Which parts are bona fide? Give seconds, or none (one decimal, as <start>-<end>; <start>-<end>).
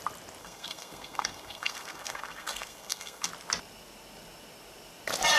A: 0.0-0.4; 3.3-5.4